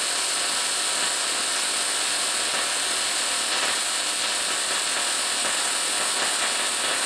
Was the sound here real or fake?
real